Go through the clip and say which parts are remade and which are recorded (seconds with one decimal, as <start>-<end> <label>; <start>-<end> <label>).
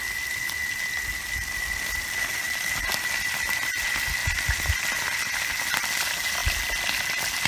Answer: 0.0-7.5 recorded